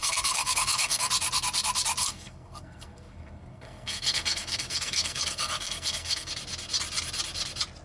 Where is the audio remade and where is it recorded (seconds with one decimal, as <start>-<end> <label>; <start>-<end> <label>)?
0.0-1.1 remade; 1.1-2.0 recorded; 2.0-6.3 remade; 6.3-7.8 recorded